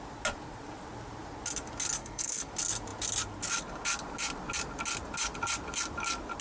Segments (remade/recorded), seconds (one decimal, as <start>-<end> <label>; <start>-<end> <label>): 0.0-2.0 recorded; 2.0-2.5 remade; 2.5-6.4 recorded